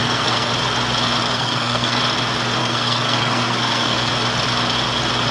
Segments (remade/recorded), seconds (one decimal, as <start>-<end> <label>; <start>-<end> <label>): 0.0-0.5 remade; 0.5-1.2 recorded; 1.2-2.0 remade; 2.0-2.6 recorded; 2.6-4.1 remade; 4.1-5.3 recorded